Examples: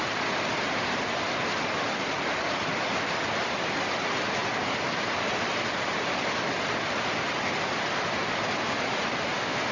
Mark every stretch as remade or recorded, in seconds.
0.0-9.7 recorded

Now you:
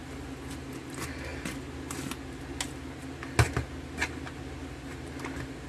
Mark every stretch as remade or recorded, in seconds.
0.0-5.7 recorded

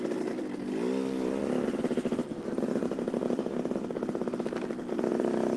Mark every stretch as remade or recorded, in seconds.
0.0-5.6 recorded

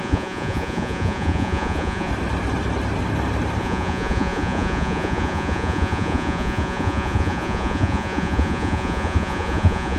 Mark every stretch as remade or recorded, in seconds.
0.0-2.1 remade; 2.1-3.6 recorded; 3.6-10.0 remade

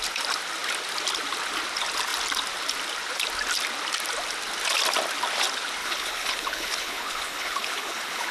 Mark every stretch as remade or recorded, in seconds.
0.0-5.8 recorded; 5.8-8.3 remade